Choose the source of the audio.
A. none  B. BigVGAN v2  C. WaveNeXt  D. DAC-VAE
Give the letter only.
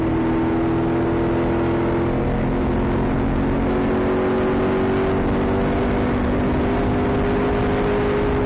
A